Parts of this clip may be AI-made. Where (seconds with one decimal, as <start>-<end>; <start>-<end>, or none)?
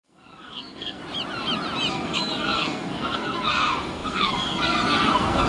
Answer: 0.0-1.0; 1.9-5.5